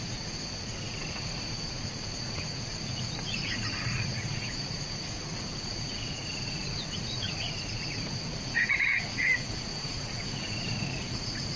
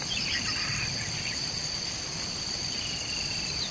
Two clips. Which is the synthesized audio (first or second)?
first